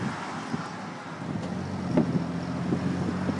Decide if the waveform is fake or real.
real